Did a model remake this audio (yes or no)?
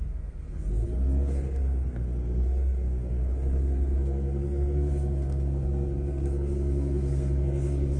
yes